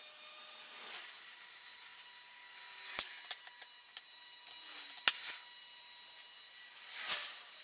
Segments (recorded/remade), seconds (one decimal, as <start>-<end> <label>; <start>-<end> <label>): 0.0-7.6 recorded

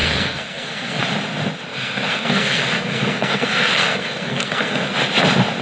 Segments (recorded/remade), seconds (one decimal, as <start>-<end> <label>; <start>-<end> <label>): 0.0-1.0 remade; 1.0-1.7 recorded; 1.7-4.9 remade; 4.9-5.6 recorded

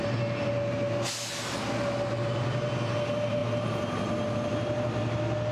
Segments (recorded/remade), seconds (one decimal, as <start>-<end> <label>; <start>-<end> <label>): 0.0-5.5 recorded